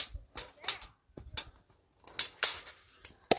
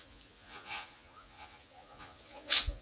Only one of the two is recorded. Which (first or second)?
first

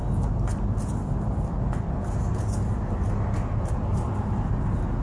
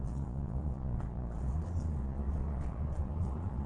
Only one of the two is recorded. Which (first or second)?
first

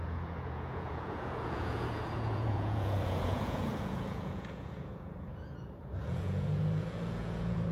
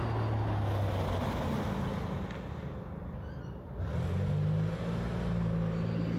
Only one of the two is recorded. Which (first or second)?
second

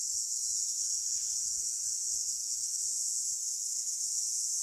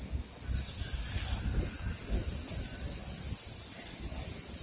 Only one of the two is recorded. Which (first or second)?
second